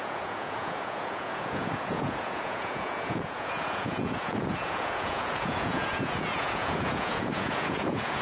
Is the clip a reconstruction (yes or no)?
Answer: yes